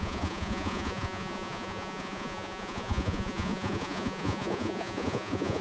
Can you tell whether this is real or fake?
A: fake